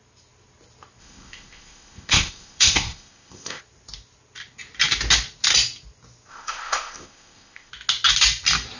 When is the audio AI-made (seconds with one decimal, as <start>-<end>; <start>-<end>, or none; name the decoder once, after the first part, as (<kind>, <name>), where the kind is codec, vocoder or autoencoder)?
1.0-3.6 (codec, ZipCodec); 6.3-7.7

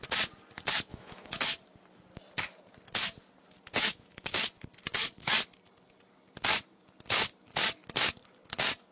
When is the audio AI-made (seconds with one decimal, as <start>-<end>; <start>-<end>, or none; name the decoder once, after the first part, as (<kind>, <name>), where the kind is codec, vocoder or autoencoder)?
0.9-1.4 (autoencoder, DAC-VAE); 3.7-4.4

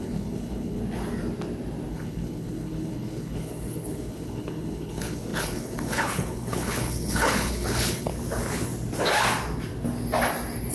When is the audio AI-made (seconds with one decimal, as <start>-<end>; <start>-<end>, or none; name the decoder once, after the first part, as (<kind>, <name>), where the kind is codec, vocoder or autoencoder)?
0.0-0.8 (codec, HILCodec); 1.9-8.1